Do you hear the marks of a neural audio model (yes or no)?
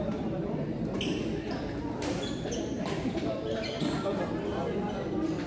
no